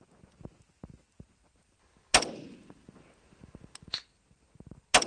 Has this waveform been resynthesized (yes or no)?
no